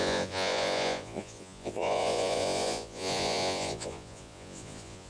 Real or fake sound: fake